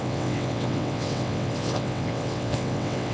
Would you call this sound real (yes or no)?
no